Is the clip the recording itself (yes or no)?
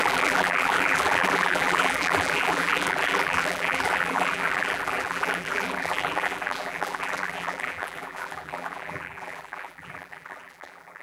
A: no